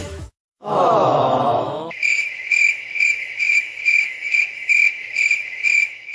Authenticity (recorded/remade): remade